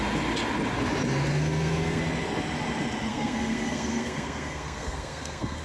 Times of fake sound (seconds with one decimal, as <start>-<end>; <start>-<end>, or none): 1.3-2.0; 3.1-5.6